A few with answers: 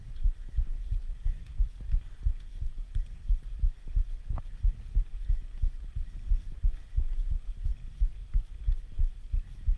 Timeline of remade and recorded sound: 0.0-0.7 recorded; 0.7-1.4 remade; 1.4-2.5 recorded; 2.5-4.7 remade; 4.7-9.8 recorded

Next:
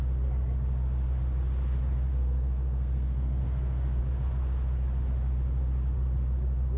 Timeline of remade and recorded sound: 0.0-2.1 recorded; 2.1-4.0 remade; 4.0-6.8 recorded

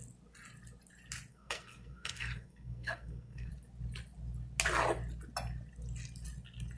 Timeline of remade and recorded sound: 0.0-1.3 recorded; 1.3-3.5 remade; 3.5-6.8 recorded

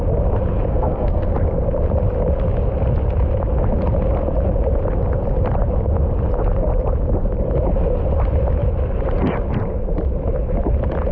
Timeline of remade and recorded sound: 0.0-0.7 recorded; 0.7-1.3 remade; 1.3-11.1 recorded

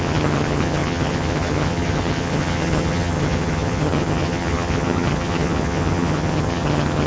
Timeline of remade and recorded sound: 0.0-7.1 remade

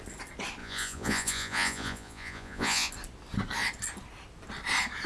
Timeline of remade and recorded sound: 0.0-0.6 recorded; 0.6-2.9 remade; 2.9-5.1 recorded